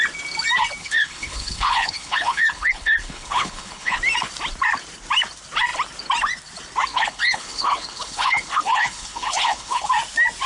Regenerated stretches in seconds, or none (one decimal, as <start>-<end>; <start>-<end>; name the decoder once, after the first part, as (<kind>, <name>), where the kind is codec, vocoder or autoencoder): 0.8-4.0 (codec, HILCodec); 6.9-9.9